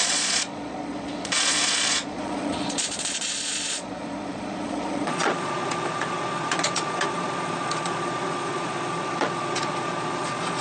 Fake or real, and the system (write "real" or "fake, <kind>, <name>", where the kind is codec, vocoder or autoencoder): fake, vocoder, Vocos